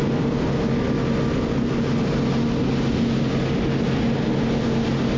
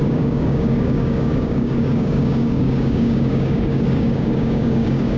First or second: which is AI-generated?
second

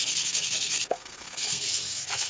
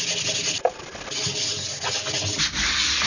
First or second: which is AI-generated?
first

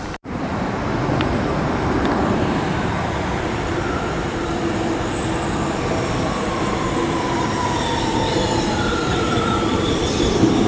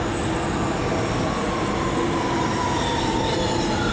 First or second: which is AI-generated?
first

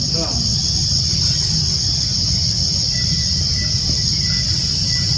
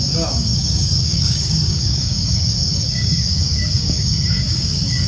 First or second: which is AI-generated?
second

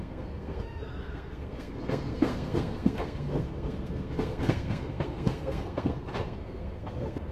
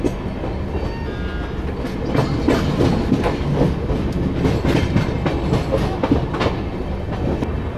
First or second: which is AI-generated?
first